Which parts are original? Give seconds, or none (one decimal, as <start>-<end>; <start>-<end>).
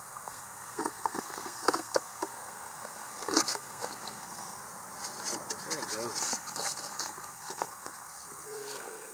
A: 4.6-6.2